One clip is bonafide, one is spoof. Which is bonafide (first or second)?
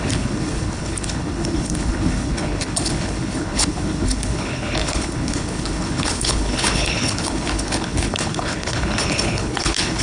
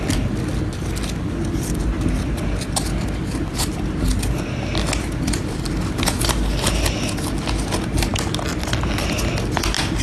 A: second